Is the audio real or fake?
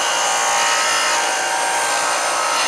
real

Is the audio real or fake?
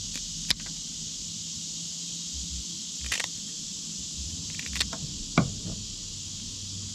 real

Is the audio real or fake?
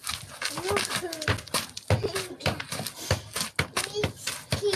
real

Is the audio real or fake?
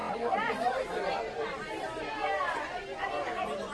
real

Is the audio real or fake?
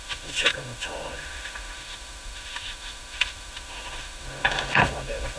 fake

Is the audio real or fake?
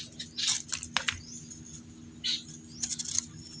real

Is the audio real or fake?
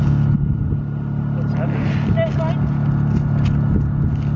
real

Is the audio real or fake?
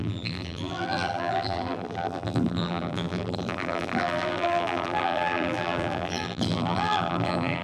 fake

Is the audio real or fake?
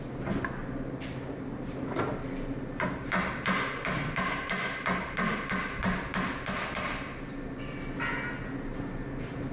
real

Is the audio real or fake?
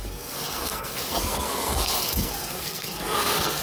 fake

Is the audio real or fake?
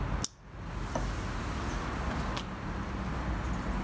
real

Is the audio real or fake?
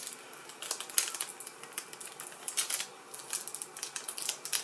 real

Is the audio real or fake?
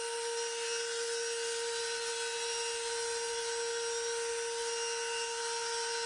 real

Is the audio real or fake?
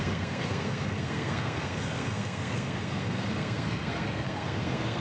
fake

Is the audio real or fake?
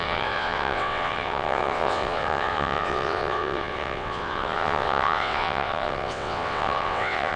fake